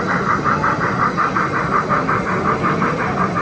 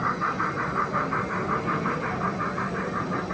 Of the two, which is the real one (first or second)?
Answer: second